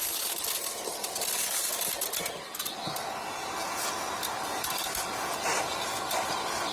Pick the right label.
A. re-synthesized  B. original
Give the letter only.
B